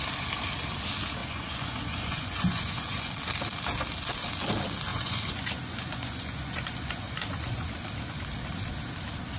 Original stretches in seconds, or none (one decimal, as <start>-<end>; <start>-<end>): 0.0-1.2; 3.1-4.9; 7.7-9.4